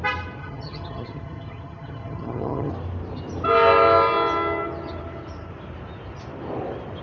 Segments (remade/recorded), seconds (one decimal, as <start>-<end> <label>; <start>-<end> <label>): 0.0-0.4 recorded; 0.4-2.7 remade; 2.7-7.0 recorded